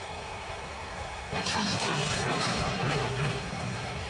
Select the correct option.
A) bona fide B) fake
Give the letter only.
B